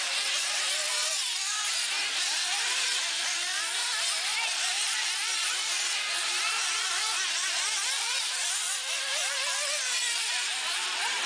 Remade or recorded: remade